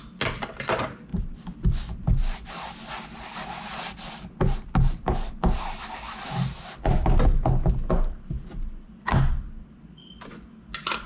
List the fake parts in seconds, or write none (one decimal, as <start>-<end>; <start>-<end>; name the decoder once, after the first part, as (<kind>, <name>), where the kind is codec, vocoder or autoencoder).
none